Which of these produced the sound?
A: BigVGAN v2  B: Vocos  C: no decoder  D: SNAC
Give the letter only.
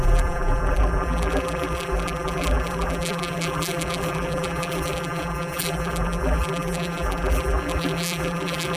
A